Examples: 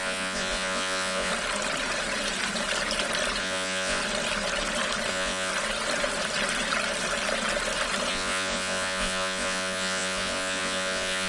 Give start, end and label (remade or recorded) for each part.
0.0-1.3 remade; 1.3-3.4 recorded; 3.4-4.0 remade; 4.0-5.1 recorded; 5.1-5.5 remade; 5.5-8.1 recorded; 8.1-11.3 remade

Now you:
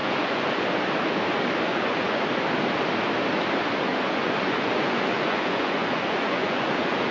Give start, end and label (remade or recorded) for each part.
0.0-0.6 remade; 0.6-1.7 recorded; 1.7-2.2 remade; 2.2-3.9 recorded; 3.9-7.1 remade

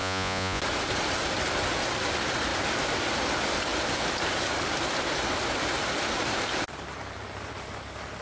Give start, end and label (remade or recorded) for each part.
0.0-0.6 remade; 0.6-8.2 recorded

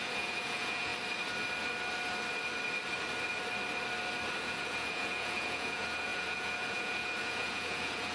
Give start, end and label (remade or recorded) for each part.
0.0-0.9 remade; 0.9-4.4 recorded; 4.4-8.1 remade

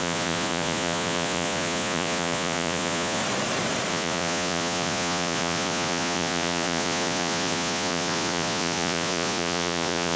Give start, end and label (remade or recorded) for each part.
0.0-3.2 remade; 3.2-3.9 recorded; 3.9-10.2 remade

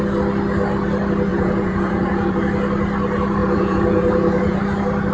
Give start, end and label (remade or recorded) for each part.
0.0-1.3 recorded; 1.3-2.4 remade; 2.4-3.4 recorded; 3.4-4.6 remade; 4.6-5.1 recorded

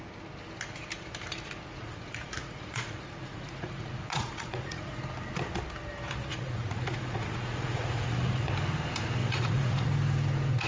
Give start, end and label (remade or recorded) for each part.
0.0-1.7 recorded; 1.7-5.0 remade; 5.0-6.3 recorded; 6.3-8.5 remade; 8.5-9.2 recorded; 9.2-9.9 remade; 9.9-10.7 recorded

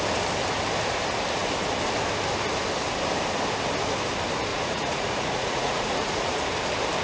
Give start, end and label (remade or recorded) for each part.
0.0-4.5 recorded; 4.5-6.4 remade; 6.4-7.0 recorded